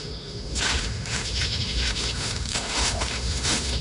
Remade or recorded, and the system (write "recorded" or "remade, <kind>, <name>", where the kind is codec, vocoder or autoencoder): remade, autoencoder, DAC-VAE